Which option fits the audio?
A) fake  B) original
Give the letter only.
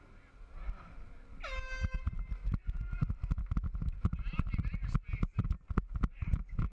B